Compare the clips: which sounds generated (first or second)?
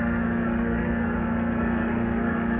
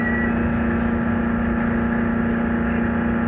first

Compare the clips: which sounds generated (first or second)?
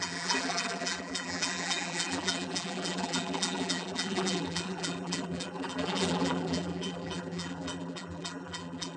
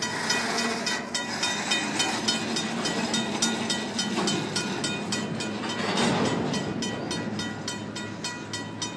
first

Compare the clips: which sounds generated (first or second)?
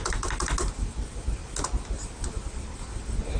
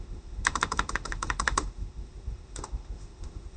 second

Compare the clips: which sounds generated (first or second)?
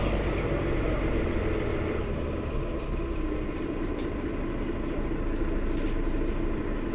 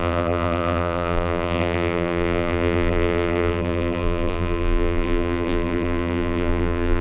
second